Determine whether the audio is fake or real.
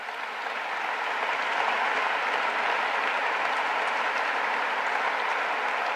real